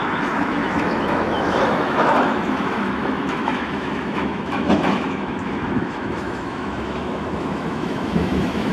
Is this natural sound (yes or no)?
no